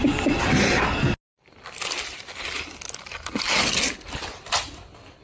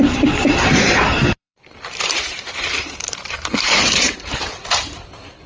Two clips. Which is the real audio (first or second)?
first